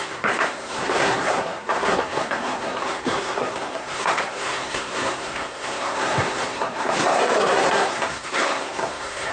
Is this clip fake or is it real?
fake